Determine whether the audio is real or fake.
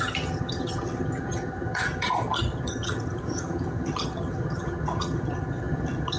fake